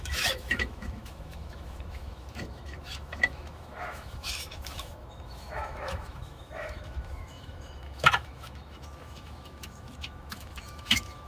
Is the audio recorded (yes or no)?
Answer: no